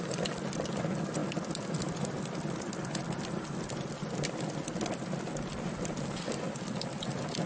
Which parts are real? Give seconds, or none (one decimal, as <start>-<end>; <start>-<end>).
0.0-7.5